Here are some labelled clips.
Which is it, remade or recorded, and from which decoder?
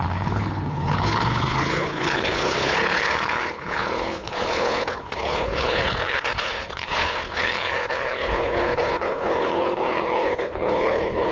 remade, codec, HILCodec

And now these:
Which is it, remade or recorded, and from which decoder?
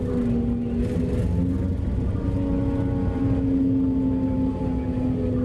recorded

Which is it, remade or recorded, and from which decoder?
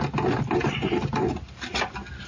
recorded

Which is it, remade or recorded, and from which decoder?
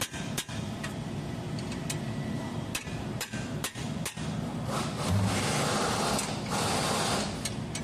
remade, vocoder, BigVGAN v2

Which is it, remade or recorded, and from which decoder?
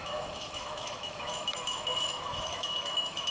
remade, autoencoder, DAC-VAE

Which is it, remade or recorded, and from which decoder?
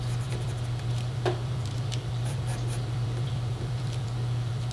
remade, vocoder, BigVGAN v2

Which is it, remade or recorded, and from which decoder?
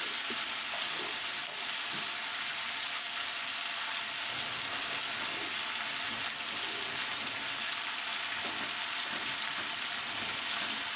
recorded